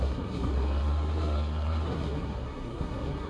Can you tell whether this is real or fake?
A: fake